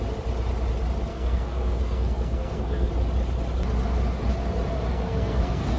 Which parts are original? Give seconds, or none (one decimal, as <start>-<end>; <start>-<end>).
0.0-1.1; 2.9-4.9